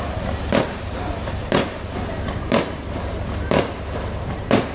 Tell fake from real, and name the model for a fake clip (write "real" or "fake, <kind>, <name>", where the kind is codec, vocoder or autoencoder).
fake, vocoder, BigVGAN v2